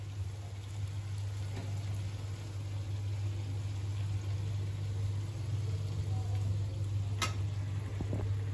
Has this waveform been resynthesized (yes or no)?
no